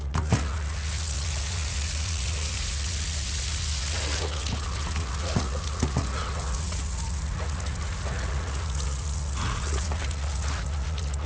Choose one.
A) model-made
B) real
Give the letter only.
A